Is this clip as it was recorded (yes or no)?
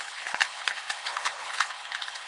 no